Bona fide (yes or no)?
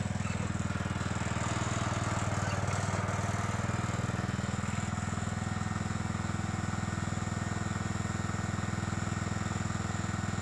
yes